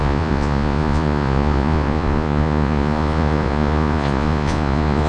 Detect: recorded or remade remade